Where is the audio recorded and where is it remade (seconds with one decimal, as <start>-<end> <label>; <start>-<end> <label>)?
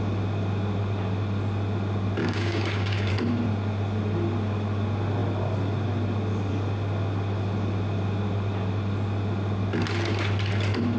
0.0-2.2 recorded; 2.2-3.1 remade; 3.1-11.0 recorded